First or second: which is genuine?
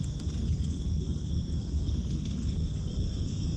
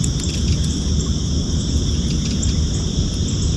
second